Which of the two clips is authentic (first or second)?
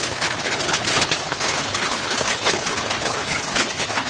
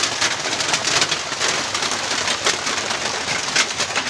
second